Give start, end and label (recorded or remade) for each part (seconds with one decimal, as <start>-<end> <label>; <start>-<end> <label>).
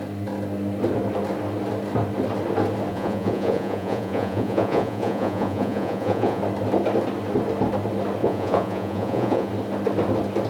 0.0-2.9 recorded; 2.9-6.4 remade; 6.4-8.2 recorded; 8.2-9.5 remade; 9.5-10.5 recorded